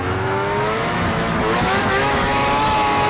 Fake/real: fake